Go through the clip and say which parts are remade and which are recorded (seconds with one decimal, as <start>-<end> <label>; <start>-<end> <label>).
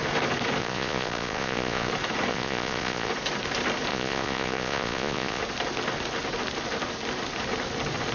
0.0-0.6 recorded; 0.6-1.9 remade; 1.9-2.3 recorded; 2.3-3.1 remade; 3.1-3.9 recorded; 3.9-5.4 remade; 5.4-8.1 recorded